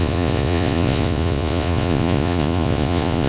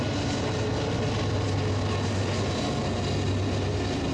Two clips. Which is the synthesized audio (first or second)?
first